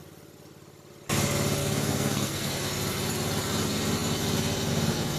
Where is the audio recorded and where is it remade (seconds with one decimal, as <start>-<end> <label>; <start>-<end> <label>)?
0.0-1.6 recorded; 1.6-2.5 remade; 2.5-5.2 recorded